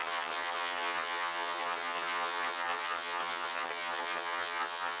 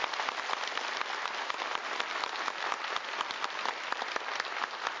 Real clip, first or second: second